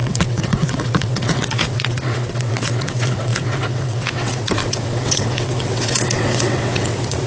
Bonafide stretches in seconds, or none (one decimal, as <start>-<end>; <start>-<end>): none